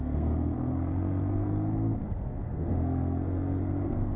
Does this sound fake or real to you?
fake